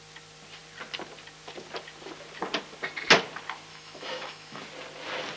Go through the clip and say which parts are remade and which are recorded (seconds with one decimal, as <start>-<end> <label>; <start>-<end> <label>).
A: 0.0-3.7 recorded; 3.7-4.6 remade; 4.6-5.4 recorded